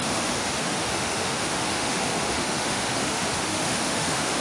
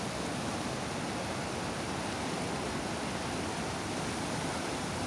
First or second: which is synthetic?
first